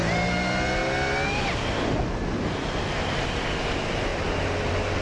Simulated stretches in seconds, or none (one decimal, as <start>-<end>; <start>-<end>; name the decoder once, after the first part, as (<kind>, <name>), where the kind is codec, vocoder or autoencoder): none